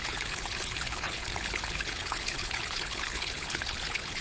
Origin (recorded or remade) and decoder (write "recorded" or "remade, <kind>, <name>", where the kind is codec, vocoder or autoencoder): remade, codec, HILCodec